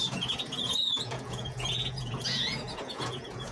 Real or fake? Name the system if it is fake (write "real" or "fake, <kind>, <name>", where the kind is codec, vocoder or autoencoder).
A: fake, vocoder, Vocos